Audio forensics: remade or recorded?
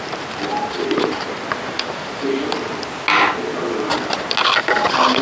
recorded